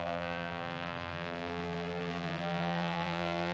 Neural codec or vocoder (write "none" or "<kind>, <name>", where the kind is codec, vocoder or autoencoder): vocoder, BigVGAN v2